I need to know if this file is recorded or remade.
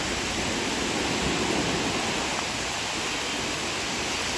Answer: recorded